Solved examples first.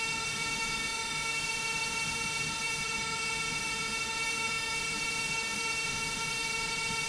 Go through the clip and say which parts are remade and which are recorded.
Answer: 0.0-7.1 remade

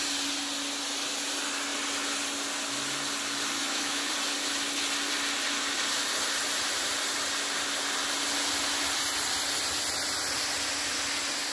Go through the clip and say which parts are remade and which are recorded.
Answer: 0.0-3.6 recorded; 3.6-4.1 remade; 4.1-11.5 recorded

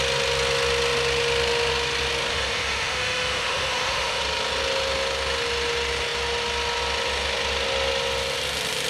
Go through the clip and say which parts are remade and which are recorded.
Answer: 0.0-2.3 recorded; 2.3-4.2 remade; 4.2-8.9 recorded

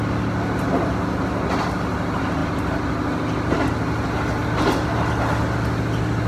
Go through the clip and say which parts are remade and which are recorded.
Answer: 0.0-6.3 recorded

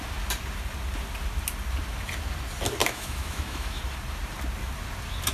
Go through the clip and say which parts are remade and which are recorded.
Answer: 0.0-2.8 recorded; 2.8-3.8 remade; 3.8-5.3 recorded